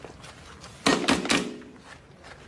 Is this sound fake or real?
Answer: real